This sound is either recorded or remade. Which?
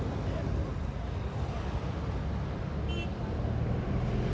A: recorded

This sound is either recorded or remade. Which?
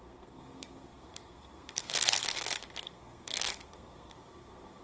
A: remade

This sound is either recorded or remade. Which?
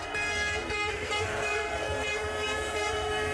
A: remade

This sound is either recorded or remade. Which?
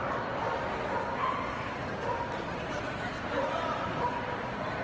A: recorded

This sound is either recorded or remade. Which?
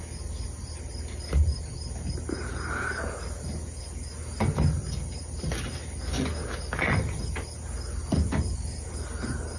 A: recorded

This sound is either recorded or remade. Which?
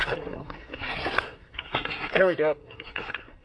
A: remade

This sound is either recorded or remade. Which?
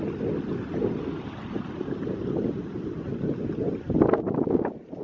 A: recorded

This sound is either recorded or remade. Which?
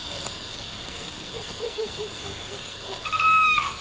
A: remade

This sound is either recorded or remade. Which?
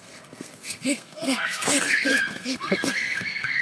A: remade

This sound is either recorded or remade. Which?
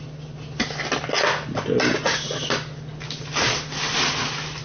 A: recorded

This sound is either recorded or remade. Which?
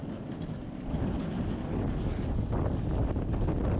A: recorded